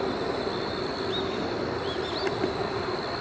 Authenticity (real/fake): real